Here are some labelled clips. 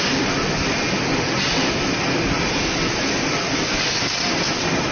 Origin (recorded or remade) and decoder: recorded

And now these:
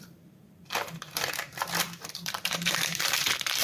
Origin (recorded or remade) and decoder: remade, vocoder, BigVGAN v2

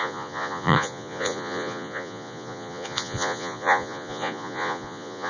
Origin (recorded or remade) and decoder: remade, vocoder, Vocos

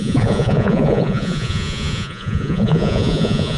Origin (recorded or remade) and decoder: remade, vocoder, Vocos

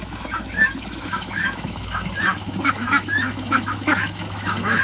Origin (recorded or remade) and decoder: remade, autoencoder, DAC-VAE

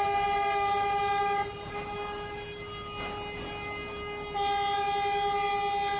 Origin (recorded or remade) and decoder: recorded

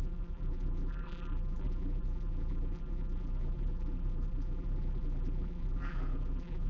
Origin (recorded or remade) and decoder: remade, vocoder, BigVGAN v2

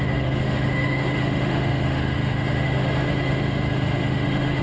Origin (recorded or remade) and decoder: remade, autoencoder, DAC-VAE